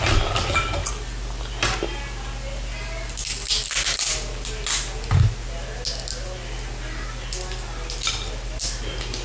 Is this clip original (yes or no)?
yes